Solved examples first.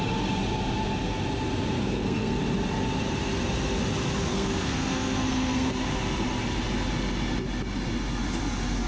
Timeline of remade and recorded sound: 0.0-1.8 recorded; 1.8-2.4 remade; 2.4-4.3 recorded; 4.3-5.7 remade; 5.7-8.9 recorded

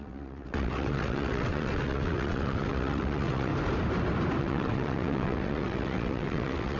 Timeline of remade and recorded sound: 0.0-3.5 remade; 3.5-4.4 recorded; 4.4-6.8 remade

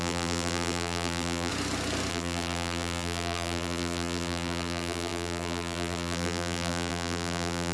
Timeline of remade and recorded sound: 0.0-1.5 remade; 1.5-2.1 recorded; 2.1-7.7 remade

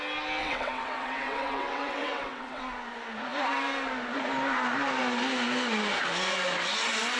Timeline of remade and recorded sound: 0.0-0.4 recorded; 0.4-2.6 remade; 2.6-7.2 recorded

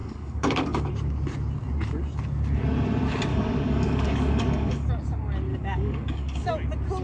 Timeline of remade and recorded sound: 0.0-0.9 remade; 0.9-3.3 recorded; 3.3-4.9 remade; 4.9-5.5 recorded; 5.5-6.5 remade; 6.5-7.0 recorded

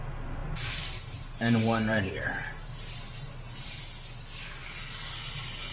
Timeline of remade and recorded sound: 0.0-0.4 recorded; 0.4-3.8 remade; 3.8-5.7 recorded

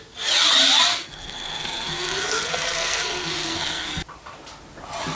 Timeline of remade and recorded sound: 0.0-0.9 recorded; 0.9-3.9 remade; 3.9-5.2 recorded